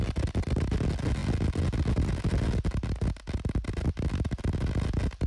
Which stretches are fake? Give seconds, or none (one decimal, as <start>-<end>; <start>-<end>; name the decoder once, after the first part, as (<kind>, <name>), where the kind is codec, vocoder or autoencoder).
none